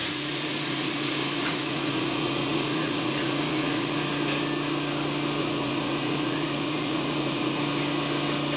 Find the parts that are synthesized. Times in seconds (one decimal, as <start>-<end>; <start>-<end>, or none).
0.0-4.1; 5.4-7.6